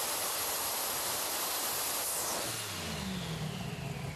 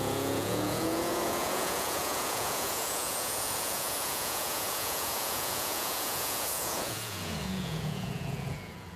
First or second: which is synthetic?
second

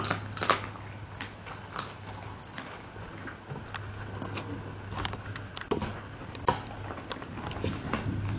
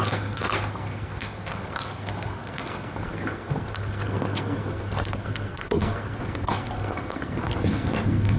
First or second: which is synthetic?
second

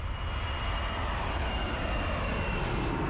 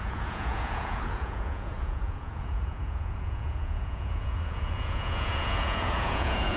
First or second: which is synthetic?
second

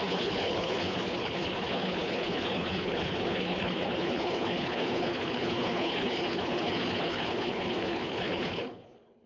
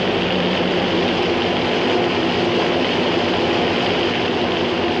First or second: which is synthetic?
first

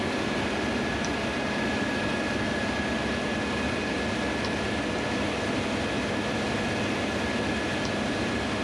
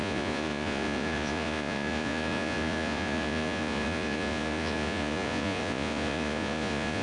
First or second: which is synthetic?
second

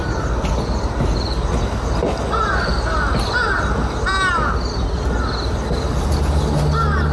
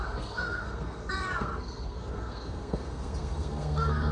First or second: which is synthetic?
second